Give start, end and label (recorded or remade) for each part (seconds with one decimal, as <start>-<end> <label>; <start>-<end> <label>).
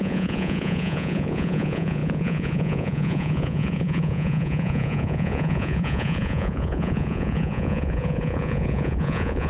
0.0-9.5 remade